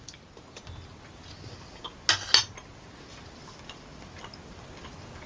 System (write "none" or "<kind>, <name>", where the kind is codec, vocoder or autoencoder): none